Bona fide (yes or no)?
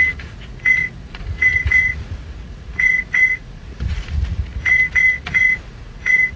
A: no